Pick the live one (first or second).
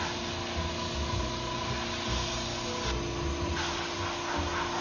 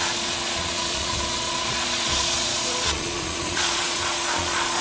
first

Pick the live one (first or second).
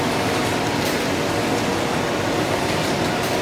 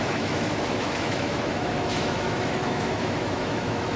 first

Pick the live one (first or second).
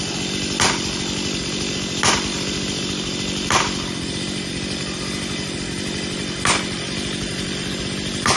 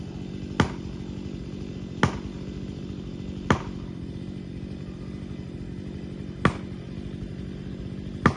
second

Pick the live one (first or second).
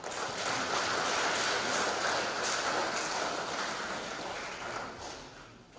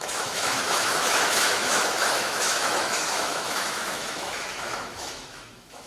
first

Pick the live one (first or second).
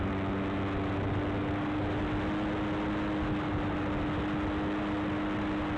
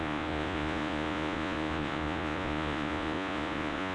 first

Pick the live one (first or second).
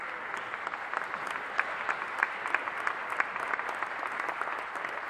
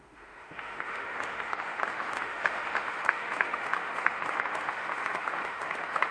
first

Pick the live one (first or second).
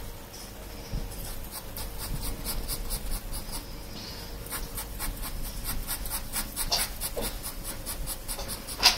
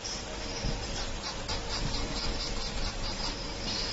first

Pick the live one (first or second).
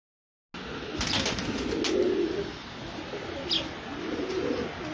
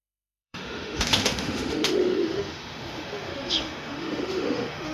first